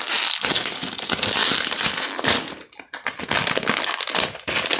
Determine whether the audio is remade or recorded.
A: recorded